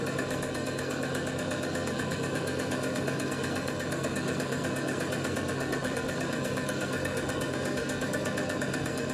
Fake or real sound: fake